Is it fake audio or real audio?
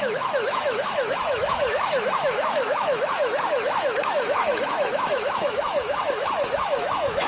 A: fake